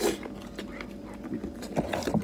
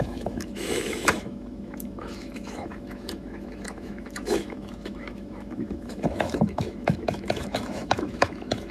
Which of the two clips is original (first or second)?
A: first